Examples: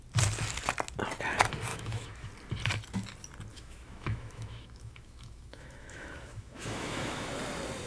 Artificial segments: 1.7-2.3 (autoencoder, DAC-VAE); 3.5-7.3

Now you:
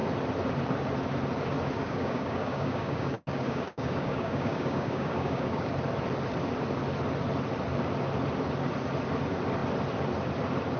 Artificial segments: 1.8-5.7 (codec, DAC)

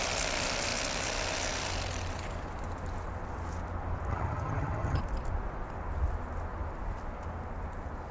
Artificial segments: 4.1-5.0 (vocoder, HiFi-GAN)

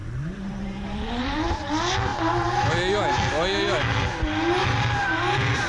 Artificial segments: 0.0-1.7 (vocoder, BigVGAN v2)

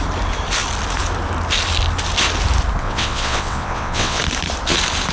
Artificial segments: 2.8-4.2 (vocoder, WaveNeXt)

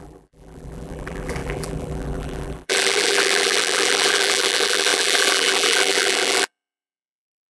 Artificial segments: 0.0-7.5 (vocoder, BigVGAN v2)